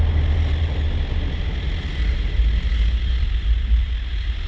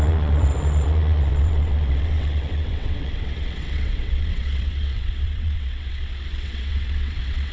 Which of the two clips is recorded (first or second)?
first